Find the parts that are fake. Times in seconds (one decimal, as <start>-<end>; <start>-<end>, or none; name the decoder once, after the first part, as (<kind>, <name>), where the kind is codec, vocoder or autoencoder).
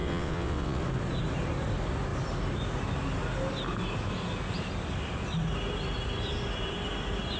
0.0-0.8 (vocoder, WaveNeXt)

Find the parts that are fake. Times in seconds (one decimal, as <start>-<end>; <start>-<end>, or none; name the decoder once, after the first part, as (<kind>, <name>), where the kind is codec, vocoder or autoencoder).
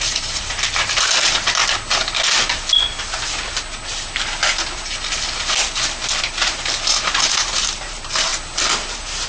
0.0-1.6 (vocoder, BigVGAN v2); 6.2-8.3; 8.9-9.3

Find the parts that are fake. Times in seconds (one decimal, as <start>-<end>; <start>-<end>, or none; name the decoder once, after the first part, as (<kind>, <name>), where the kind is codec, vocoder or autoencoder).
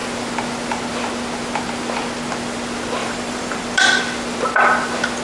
3.0-4.0 (vocoder, BigVGAN v2)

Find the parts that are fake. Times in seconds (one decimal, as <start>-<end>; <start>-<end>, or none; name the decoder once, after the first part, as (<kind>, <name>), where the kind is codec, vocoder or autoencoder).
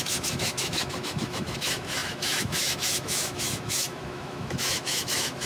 0.0-5.5 (autoencoder, DAC-VAE)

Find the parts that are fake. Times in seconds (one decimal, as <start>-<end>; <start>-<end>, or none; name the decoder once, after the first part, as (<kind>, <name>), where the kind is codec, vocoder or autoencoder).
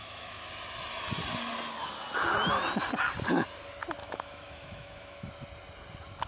0.0-0.5 (autoencoder, DAC-VAE); 4.0-5.3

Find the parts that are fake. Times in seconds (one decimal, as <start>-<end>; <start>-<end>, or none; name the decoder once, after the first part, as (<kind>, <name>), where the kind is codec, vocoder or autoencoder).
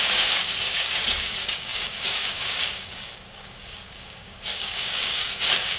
0.0-5.8 (codec, DAC)